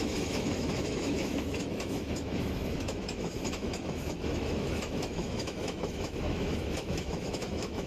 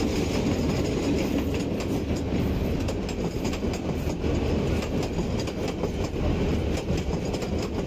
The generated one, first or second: first